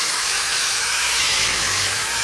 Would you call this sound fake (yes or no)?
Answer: yes